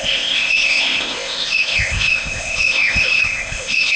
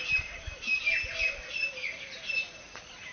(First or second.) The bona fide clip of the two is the second